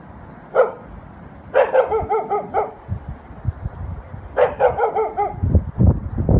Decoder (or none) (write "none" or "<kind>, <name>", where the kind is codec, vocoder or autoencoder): none